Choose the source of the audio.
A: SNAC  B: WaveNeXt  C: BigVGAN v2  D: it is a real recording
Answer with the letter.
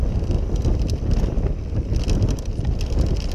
D